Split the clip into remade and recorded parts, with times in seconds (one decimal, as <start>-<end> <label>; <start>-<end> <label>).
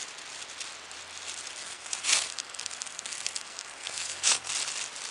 0.0-1.6 recorded; 1.6-4.5 remade; 4.5-5.1 recorded